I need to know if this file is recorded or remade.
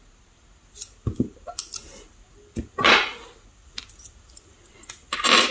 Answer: recorded